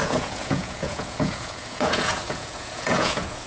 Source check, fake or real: fake